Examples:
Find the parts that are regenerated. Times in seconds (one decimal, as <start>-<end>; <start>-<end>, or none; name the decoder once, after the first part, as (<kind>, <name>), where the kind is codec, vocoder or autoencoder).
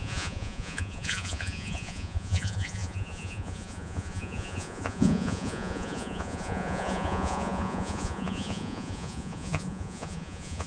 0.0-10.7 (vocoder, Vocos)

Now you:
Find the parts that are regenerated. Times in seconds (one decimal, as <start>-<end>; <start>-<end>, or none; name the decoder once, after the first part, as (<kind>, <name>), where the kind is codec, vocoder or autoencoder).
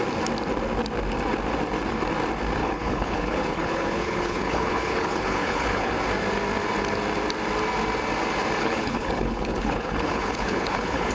2.6-5.9 (codec, HILCodec); 8.6-11.1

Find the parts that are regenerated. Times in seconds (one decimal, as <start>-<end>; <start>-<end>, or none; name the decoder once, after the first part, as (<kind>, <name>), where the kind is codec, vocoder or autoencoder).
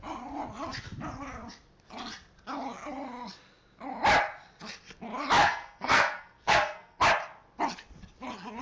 5.4-7.0 (codec, SNAC)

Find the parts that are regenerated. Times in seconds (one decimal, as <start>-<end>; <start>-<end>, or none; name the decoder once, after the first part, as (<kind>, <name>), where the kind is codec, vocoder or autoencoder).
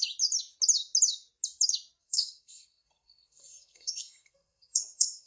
2.0-5.3 (codec, SNAC)